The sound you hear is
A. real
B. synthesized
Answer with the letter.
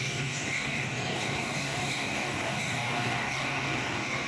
B